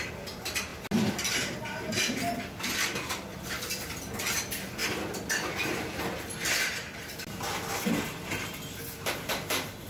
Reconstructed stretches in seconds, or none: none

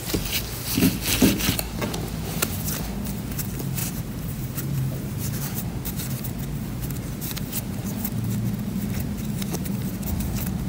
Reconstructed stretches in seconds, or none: 3.8-5.6